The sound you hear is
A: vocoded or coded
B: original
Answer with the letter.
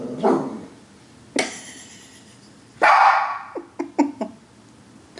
B